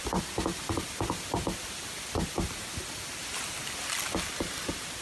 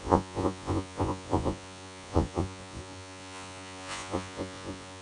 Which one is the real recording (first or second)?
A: first